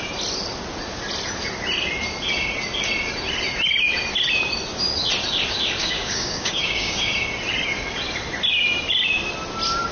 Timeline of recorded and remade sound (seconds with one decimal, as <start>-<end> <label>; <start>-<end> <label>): 0.0-5.8 recorded; 5.8-7.1 remade; 7.1-9.9 recorded